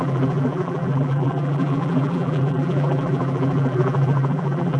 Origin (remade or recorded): remade